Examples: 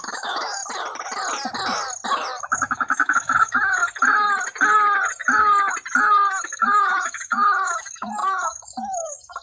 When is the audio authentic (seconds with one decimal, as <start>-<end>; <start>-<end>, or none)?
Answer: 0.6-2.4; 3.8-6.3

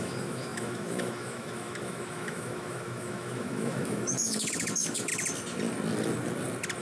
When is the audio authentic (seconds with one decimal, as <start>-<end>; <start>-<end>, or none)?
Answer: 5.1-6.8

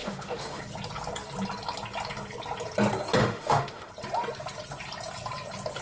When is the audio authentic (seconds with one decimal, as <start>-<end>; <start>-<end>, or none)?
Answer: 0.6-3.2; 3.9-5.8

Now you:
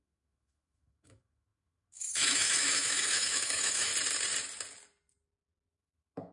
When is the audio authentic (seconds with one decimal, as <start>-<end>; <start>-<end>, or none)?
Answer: 3.9-5.7